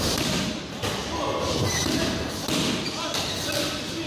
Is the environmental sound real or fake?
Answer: real